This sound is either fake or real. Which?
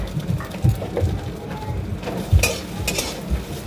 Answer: real